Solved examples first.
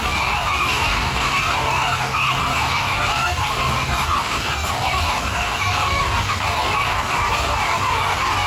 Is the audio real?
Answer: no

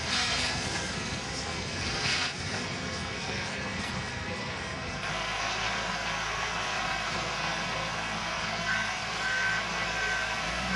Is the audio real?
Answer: no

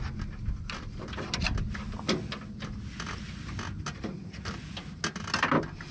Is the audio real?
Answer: yes